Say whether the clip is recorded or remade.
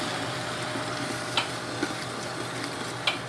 recorded